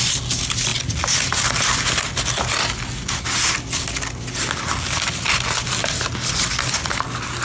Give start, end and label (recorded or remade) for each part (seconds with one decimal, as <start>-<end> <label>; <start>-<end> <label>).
0.0-7.4 recorded